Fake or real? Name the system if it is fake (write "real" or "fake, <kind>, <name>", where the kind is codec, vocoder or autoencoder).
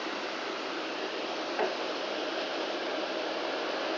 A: real